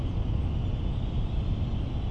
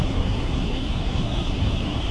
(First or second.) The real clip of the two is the first